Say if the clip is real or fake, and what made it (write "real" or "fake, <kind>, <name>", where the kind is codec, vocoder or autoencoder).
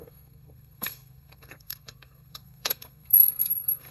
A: fake, codec, SNAC